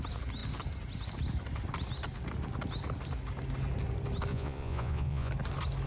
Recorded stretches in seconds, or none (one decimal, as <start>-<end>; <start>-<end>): 0.0-4.3; 5.3-5.9